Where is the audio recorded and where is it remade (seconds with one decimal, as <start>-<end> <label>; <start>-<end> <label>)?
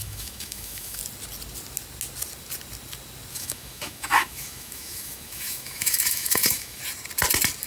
0.0-1.0 remade; 1.0-3.3 recorded; 3.3-6.8 remade; 6.8-7.7 recorded